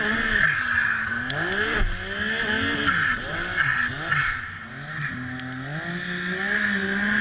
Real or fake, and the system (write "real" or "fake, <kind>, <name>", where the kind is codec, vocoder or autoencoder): real